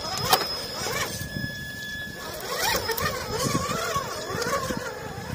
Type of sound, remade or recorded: remade